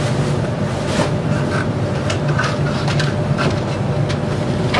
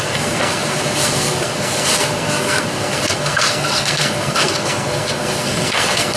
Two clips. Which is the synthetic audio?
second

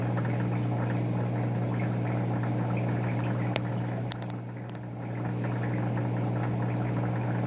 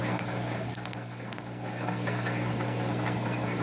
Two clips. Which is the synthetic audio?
second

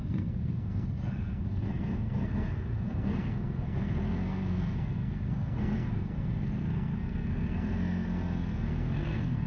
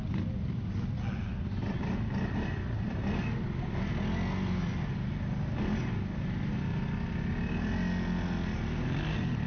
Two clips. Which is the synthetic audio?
first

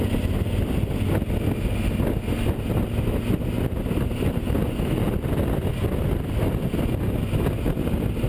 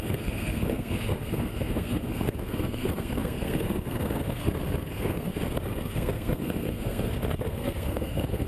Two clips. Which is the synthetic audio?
second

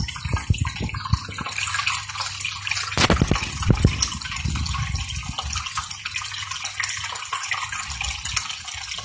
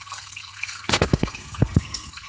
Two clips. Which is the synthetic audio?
second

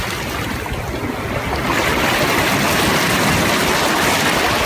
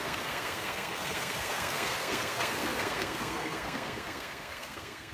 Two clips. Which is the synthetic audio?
second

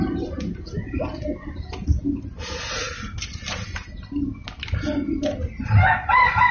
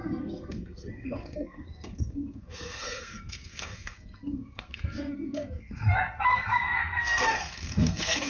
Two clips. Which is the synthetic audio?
second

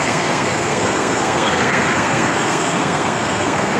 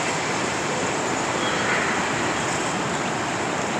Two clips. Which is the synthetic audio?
first